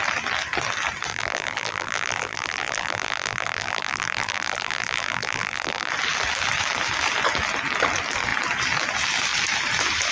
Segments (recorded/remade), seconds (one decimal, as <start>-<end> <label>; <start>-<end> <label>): 0.0-1.1 recorded; 1.1-5.9 remade; 5.9-10.1 recorded